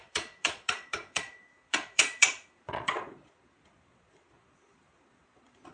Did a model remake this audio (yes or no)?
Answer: yes